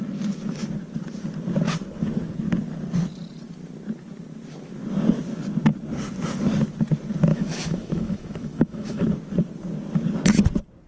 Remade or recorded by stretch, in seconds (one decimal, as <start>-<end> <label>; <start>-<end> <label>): 0.0-7.3 recorded; 7.3-9.1 remade; 9.1-10.9 recorded